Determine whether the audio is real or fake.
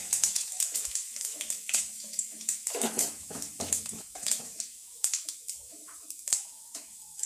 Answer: fake